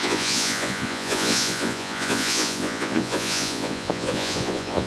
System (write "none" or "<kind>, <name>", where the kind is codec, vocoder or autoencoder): vocoder, Vocos